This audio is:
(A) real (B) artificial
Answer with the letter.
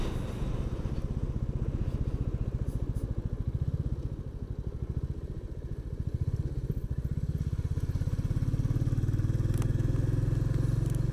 A